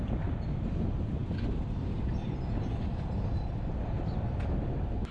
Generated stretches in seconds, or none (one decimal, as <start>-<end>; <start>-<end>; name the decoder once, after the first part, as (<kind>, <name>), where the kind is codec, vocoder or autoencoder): none